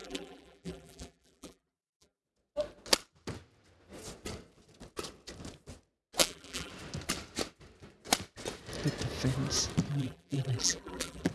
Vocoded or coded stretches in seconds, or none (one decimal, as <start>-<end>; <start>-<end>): 0.0-2.2; 6.2-6.7; 9.9-11.3